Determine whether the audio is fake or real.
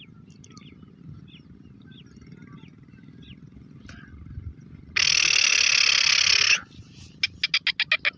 real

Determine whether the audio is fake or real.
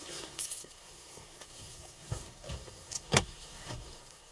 fake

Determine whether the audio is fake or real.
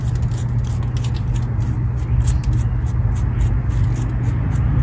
real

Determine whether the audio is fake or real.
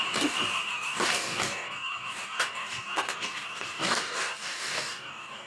fake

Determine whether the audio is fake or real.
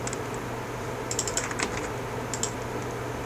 real